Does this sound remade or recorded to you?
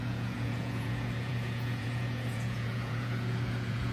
remade